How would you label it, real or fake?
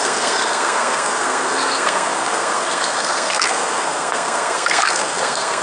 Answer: fake